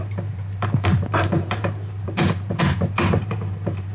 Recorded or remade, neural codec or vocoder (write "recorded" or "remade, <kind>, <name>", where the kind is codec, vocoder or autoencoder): remade, vocoder, BigVGAN v2